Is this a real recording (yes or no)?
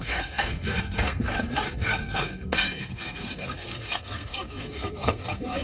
no